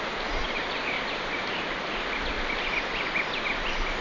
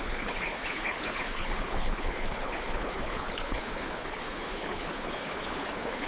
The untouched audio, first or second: first